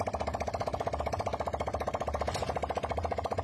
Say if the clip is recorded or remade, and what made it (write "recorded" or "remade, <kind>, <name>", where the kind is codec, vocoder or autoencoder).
recorded